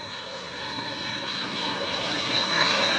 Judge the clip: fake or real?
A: fake